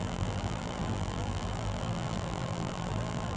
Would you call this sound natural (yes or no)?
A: no